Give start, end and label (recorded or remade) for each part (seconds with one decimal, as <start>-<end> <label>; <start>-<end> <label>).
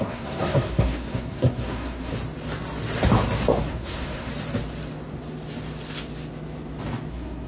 0.0-2.1 remade; 2.1-3.7 recorded; 3.7-4.3 remade; 4.3-7.1 recorded; 7.1-7.5 remade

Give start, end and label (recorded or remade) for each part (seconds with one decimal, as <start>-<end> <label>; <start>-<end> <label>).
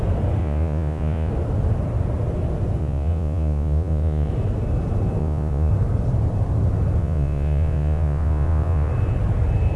0.0-0.4 recorded; 0.4-1.3 remade; 1.3-2.8 recorded; 2.8-4.3 remade; 4.3-5.2 recorded; 5.2-5.7 remade; 5.7-7.0 recorded; 7.0-8.9 remade; 8.9-9.8 recorded